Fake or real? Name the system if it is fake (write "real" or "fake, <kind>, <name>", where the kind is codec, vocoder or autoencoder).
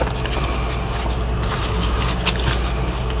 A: real